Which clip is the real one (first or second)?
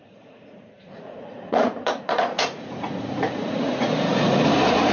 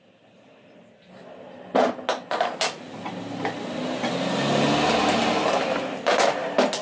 second